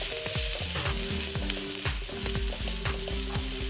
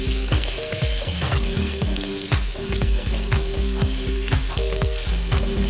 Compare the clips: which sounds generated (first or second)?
second